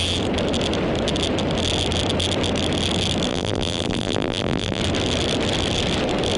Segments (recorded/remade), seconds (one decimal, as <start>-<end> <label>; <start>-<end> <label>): 0.0-3.3 recorded; 3.3-4.8 remade; 4.8-6.4 recorded